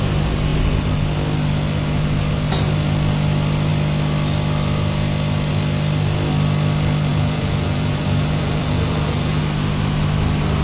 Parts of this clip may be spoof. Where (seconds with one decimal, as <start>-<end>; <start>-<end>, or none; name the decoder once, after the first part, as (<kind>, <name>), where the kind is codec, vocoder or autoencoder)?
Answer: 7.1-9.4 (vocoder, BigVGAN v2)

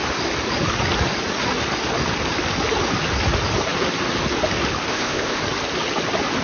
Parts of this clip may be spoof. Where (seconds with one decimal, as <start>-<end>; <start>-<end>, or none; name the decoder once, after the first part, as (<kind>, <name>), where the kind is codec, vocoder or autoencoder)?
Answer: 4.9-5.4 (codec, ZipCodec)